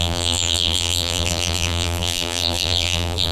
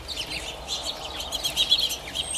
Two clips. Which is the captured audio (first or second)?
second